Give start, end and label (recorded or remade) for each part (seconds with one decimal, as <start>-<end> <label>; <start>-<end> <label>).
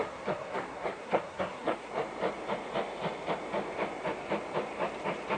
0.0-1.9 remade; 1.9-5.4 recorded